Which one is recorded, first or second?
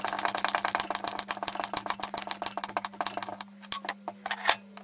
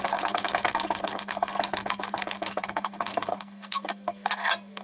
first